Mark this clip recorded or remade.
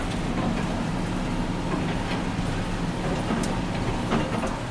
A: recorded